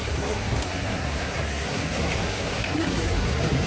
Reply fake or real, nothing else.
fake